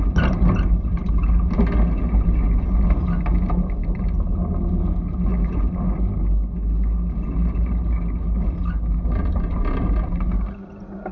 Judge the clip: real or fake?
real